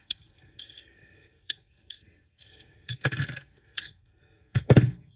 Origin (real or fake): fake